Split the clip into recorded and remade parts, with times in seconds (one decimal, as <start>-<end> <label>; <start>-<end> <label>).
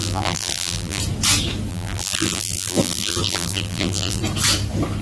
0.0-1.0 remade; 1.0-1.7 recorded; 1.7-4.2 remade; 4.2-5.0 recorded